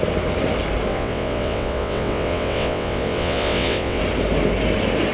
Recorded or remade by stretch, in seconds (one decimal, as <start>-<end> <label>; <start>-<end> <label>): 0.0-0.9 recorded; 0.9-4.0 remade; 4.0-5.1 recorded